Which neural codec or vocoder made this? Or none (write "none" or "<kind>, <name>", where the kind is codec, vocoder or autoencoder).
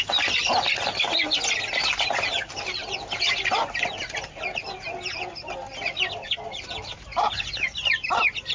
none